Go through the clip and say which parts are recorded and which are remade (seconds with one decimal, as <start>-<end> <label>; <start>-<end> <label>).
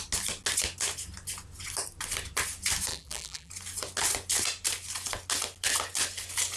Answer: 0.0-2.9 recorded; 2.9-3.5 remade; 3.5-6.6 recorded